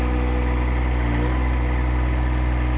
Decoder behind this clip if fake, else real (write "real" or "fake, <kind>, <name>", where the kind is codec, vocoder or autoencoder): real